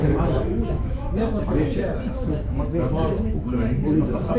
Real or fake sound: fake